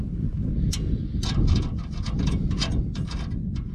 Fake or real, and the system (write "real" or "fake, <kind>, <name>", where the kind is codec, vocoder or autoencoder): real